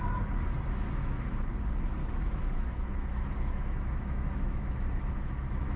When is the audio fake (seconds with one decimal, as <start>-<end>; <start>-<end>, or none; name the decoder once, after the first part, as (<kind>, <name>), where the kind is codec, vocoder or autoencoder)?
1.0-1.5 (autoencoder, DAC-VAE); 2.0-5.8